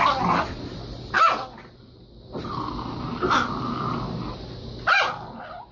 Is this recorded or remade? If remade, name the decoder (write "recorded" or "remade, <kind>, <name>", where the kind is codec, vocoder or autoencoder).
recorded